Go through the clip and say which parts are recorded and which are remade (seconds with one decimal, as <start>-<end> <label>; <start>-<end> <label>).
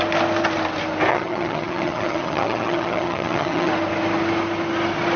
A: 0.0-1.1 recorded; 1.1-3.7 remade; 3.7-5.2 recorded